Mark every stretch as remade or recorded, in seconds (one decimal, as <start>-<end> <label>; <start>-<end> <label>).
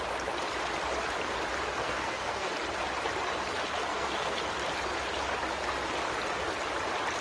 0.0-1.8 recorded; 1.8-2.5 remade; 2.5-3.9 recorded; 3.9-4.4 remade; 4.4-7.2 recorded